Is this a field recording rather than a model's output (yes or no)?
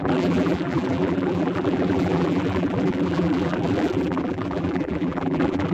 no